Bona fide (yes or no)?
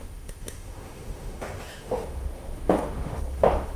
no